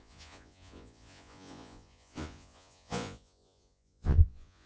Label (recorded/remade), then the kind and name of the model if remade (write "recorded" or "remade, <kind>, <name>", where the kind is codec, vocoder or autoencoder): remade, vocoder, Vocos